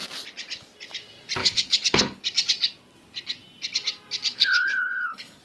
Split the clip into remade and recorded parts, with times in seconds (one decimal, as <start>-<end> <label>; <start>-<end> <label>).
0.0-1.4 recorded; 1.4-2.2 remade; 2.2-4.3 recorded; 4.3-5.4 remade